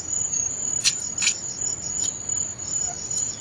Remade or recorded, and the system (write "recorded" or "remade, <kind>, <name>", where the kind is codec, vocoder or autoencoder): recorded